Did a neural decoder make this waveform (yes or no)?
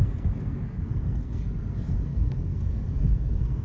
yes